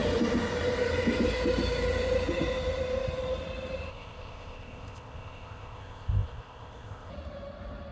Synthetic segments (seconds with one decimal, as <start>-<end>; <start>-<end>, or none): 3.9-7.1